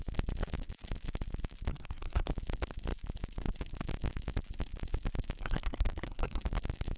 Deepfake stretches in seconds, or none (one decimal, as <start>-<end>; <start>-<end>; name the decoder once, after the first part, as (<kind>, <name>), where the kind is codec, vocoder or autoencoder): 1.7-2.3 (codec, SNAC); 5.4-6.4